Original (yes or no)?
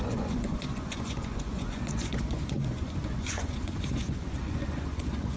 no